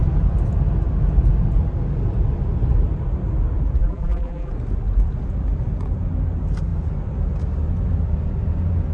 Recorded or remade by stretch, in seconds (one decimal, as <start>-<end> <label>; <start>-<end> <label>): 0.0-3.8 recorded; 3.8-4.5 remade; 4.5-8.9 recorded